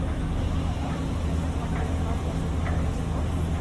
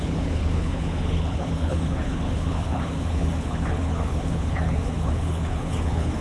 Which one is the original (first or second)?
first